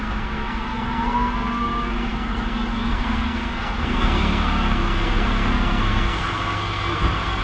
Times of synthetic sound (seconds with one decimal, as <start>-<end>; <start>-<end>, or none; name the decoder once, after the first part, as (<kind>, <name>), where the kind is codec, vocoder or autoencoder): 0.0-7.4 (codec, SNAC)